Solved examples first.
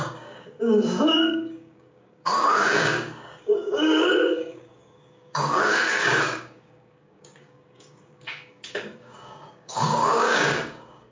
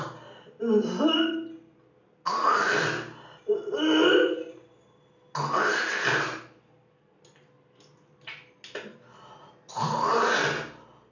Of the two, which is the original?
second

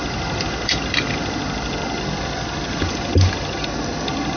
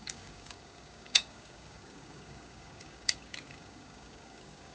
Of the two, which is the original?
first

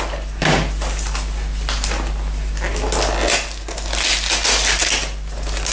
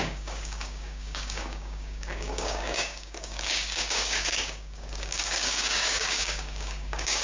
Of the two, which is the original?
first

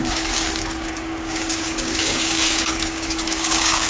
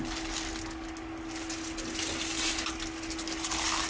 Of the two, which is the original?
second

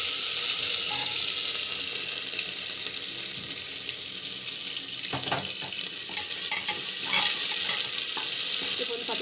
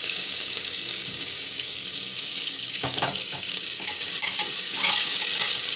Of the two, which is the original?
first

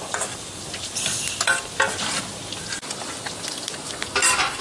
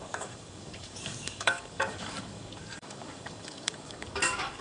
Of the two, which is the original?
first